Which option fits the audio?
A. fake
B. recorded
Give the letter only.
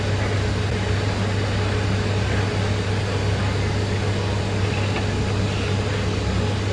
B